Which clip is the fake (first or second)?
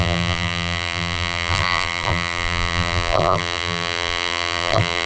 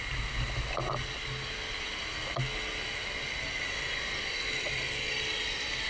first